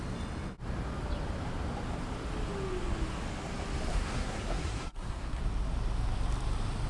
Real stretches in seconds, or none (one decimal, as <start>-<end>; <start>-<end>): 0.0-3.9; 5.4-6.9